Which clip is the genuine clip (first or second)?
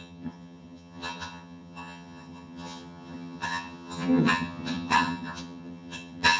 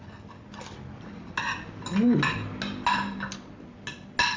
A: second